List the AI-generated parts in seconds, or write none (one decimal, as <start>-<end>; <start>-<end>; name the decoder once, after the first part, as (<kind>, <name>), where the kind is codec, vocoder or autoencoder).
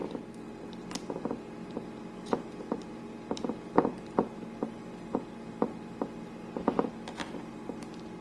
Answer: none